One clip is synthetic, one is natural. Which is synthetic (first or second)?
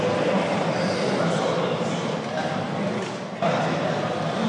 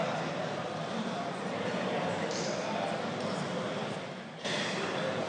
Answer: second